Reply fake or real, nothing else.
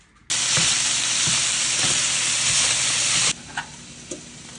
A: real